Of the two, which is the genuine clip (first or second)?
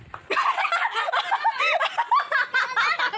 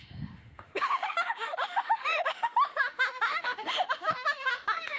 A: first